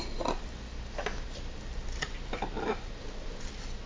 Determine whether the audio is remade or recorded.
recorded